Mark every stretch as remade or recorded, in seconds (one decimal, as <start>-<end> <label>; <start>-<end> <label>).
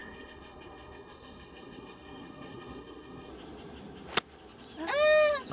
0.0-3.3 remade; 3.3-5.5 recorded